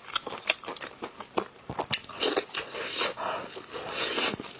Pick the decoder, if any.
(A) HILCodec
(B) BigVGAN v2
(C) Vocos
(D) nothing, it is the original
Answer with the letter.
D